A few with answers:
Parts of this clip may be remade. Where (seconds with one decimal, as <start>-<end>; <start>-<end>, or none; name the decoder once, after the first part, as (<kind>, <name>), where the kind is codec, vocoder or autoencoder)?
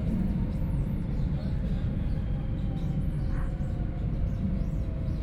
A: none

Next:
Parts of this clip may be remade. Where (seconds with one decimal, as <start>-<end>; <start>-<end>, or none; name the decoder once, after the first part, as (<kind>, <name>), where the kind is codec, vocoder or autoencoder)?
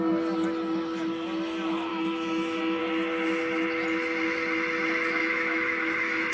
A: 1.9-2.8 (autoencoder, DAC-VAE); 5.2-6.3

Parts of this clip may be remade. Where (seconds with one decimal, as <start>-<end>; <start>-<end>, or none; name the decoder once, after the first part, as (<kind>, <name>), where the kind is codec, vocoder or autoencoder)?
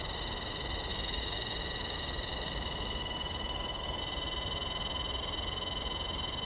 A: 0.9-4.0 (autoencoder, DAC-VAE)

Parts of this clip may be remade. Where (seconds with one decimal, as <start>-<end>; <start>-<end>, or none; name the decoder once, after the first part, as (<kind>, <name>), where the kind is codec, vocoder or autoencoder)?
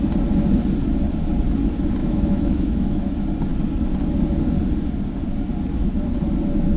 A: 2.0-3.1 (autoencoder, DAC-VAE)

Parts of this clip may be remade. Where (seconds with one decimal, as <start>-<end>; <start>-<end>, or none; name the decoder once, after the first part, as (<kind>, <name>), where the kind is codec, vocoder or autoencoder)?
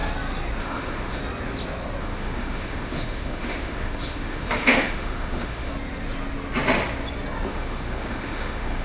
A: 0.6-1.2 (autoencoder, DAC-VAE); 2.0-5.7; 7.5-8.8